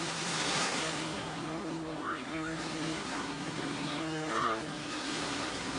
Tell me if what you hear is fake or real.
fake